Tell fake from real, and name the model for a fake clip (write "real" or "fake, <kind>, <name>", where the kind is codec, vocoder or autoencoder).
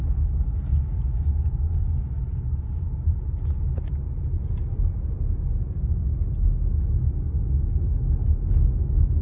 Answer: real